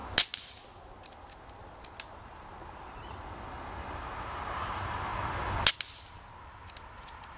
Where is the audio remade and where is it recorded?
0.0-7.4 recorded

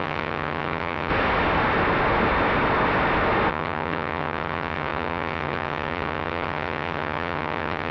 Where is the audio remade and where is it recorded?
0.0-1.1 remade; 1.1-3.5 recorded; 3.5-7.9 remade

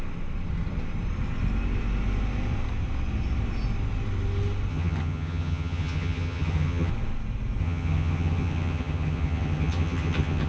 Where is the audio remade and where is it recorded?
0.0-4.7 recorded; 4.7-6.9 remade; 6.9-7.6 recorded; 7.6-10.5 remade